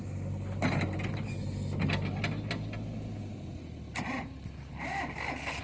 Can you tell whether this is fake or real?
real